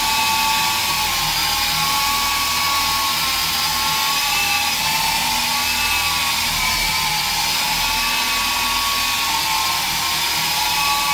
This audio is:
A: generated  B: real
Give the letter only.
B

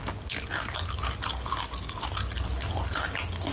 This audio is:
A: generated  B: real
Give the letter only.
B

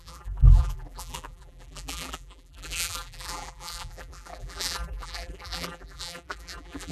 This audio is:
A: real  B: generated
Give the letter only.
B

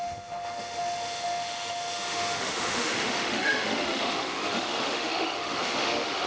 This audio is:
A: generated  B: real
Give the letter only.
A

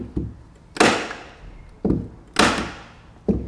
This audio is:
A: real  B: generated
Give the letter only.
A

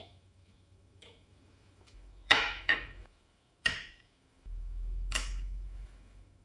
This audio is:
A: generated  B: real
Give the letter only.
A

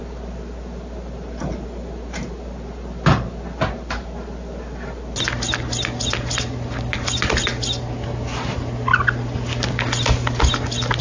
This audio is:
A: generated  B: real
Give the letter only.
B